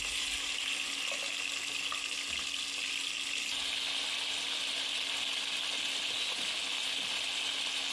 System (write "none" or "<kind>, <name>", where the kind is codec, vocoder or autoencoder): none